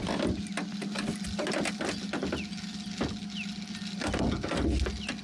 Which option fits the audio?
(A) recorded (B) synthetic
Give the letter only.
A